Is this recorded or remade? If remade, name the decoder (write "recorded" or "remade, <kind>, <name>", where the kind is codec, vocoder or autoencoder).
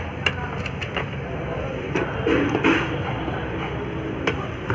remade, vocoder, BigVGAN v2